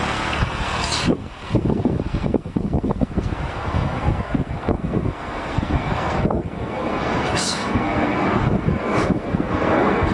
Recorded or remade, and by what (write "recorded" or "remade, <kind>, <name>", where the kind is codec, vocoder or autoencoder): remade, codec, SNAC